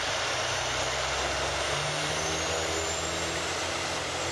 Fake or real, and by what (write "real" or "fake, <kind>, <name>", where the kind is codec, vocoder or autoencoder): real